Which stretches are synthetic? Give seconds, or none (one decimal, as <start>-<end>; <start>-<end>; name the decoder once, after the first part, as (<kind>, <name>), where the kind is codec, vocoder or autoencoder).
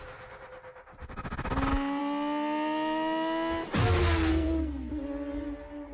4.3-4.9 (codec, SNAC)